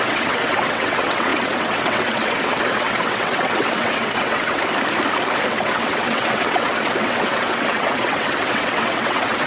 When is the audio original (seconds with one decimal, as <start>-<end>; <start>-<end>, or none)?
4.6-5.5